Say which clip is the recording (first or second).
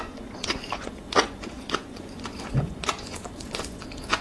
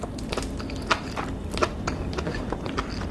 second